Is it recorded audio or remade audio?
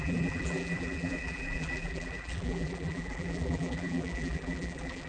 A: remade